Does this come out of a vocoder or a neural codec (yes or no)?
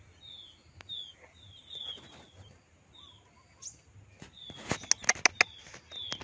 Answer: no